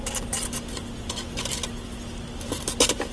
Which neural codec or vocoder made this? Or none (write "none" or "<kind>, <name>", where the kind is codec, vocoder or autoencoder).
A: none